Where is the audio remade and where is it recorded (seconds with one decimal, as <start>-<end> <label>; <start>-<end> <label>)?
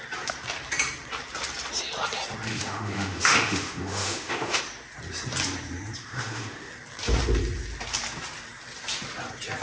0.0-2.5 recorded; 2.5-4.6 remade; 4.6-6.0 recorded; 6.0-6.7 remade; 6.7-9.6 recorded